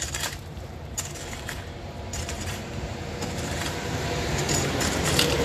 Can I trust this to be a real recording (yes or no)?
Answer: no